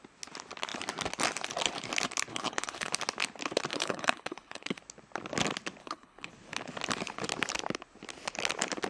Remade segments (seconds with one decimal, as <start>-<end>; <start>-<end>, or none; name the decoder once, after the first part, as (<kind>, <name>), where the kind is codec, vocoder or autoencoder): 2.3-2.9 (codec, HILCodec); 3.7-4.8; 5.8-6.3